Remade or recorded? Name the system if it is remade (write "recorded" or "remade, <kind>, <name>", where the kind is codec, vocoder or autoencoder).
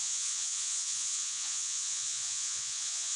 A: remade, vocoder, Vocos